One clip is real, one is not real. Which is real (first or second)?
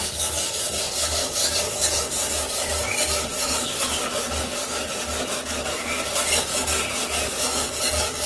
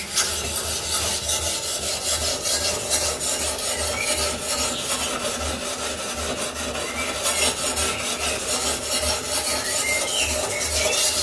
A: second